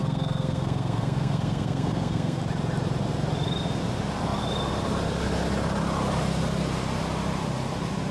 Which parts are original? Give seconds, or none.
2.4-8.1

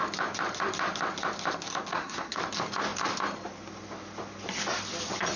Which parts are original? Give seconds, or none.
0.0-1.9; 2.4-5.4

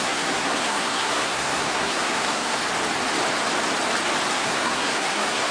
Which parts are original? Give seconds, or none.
2.6-4.3